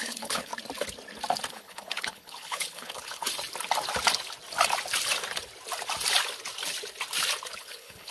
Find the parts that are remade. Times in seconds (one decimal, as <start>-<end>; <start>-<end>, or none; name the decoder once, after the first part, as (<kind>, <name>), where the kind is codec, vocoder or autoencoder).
0.0-0.5 (codec, HILCodec); 1.5-3.2; 7.6-8.1